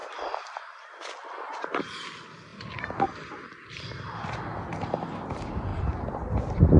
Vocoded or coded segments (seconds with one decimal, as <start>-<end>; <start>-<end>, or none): 0.0-1.0; 5.7-6.3